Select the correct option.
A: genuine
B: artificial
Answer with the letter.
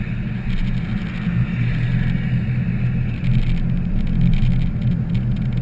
A